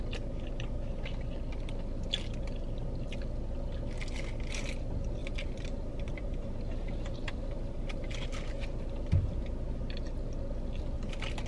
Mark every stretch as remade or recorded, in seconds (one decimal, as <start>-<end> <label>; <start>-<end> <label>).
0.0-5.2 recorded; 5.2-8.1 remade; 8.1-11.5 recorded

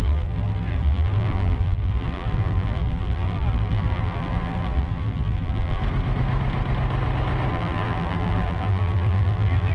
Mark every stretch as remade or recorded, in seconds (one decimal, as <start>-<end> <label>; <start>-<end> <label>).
0.0-5.8 remade; 5.8-7.5 recorded; 7.5-9.7 remade

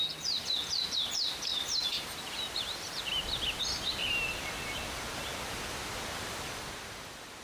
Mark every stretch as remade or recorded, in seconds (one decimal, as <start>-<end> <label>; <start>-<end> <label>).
0.0-1.5 recorded; 1.5-3.0 remade; 3.0-7.4 recorded

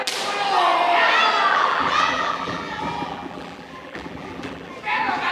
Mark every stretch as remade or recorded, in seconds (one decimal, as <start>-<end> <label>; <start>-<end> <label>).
0.0-1.5 recorded; 1.5-4.7 remade; 4.7-5.3 recorded

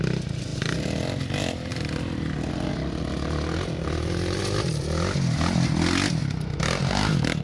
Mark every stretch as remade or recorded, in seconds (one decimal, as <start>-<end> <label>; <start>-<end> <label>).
0.0-7.4 recorded

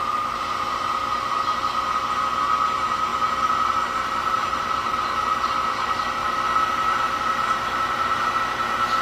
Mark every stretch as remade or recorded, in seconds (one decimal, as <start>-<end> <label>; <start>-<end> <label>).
0.0-1.0 remade; 1.0-2.6 recorded; 2.6-3.1 remade; 3.1-3.7 recorded; 3.7-6.2 remade; 6.2-6.7 recorded; 6.7-9.0 remade